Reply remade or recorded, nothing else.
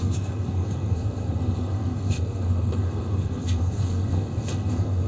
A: remade